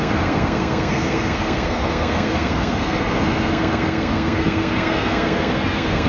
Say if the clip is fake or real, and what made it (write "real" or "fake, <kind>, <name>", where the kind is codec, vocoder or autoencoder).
fake, codec, SNAC